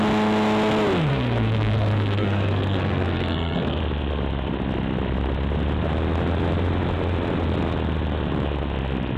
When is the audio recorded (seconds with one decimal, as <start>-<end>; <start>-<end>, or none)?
0.0-1.1; 3.8-9.2

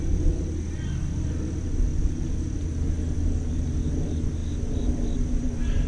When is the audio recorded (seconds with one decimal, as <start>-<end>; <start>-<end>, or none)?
0.0-5.9

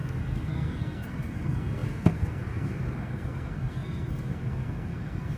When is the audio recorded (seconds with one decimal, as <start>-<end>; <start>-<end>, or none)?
none

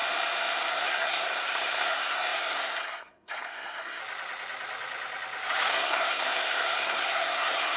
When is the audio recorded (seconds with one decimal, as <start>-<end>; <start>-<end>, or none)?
0.0-0.7; 4.0-5.7

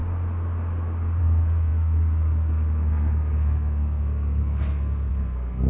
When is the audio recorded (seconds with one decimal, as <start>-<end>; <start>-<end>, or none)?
0.0-1.2

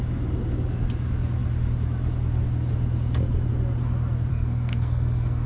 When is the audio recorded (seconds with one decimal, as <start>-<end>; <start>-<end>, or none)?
0.0-4.3

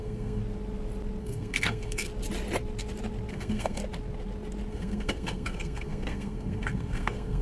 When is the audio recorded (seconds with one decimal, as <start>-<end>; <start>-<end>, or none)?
0.4-1.2; 2.1-3.3; 3.8-4.7

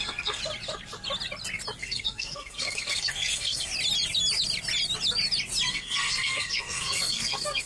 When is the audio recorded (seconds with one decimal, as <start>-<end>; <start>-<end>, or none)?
0.4-1.8; 3.7-5.7